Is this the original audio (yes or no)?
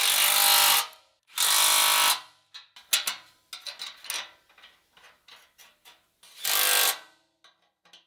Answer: yes